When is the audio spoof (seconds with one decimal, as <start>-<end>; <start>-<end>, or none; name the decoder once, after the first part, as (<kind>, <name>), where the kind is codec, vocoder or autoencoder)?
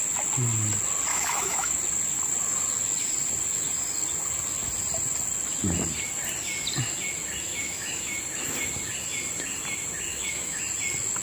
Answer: 1.1-1.8 (autoencoder, DAC-VAE); 7.5-8.2; 10.1-10.6